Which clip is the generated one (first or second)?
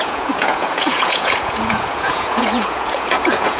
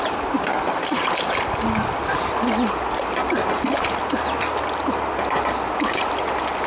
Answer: first